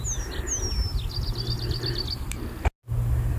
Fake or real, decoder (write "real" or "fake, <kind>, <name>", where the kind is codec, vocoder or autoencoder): real